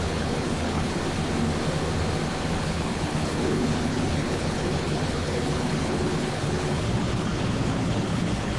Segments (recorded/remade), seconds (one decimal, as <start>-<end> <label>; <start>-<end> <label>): 0.0-1.0 remade; 1.0-2.5 recorded; 2.5-8.6 remade